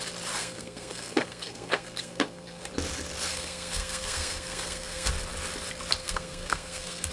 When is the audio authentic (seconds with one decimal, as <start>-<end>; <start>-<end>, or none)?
0.0-0.4; 2.7-3.3; 5.1-6.0